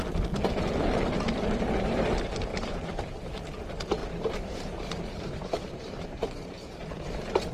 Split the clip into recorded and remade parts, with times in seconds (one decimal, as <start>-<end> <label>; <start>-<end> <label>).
0.0-2.5 recorded; 2.5-3.4 remade; 3.4-4.0 recorded; 4.0-6.5 remade; 6.5-7.5 recorded